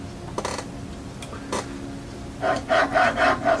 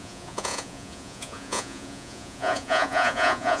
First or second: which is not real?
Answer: second